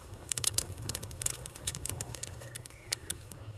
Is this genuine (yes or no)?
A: no